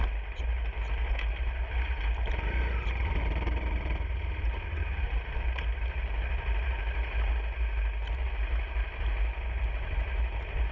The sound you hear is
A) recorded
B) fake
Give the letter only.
A